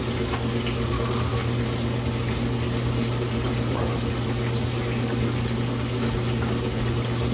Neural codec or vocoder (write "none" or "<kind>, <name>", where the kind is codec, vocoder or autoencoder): none